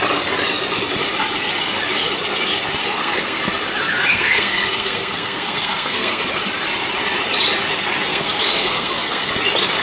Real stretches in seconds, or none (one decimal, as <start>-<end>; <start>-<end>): 0.0-2.8; 3.4-4.1; 6.2-8.1; 9.3-9.8